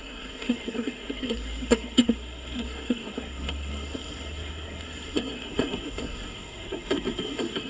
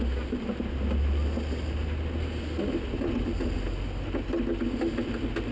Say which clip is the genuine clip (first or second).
second